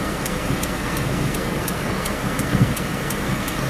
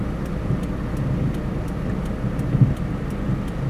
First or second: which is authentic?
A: second